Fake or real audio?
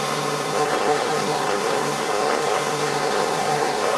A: fake